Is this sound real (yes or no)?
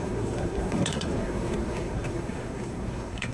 no